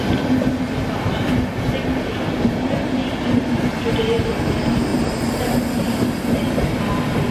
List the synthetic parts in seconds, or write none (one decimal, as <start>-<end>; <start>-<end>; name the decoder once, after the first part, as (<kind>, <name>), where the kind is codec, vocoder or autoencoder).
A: 4.9-6.0 (vocoder, BigVGAN v2)